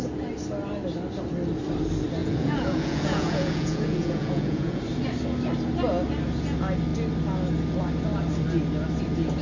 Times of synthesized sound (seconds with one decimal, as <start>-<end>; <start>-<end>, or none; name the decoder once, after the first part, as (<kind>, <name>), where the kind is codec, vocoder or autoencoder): 2.2-4.8 (vocoder, Vocos)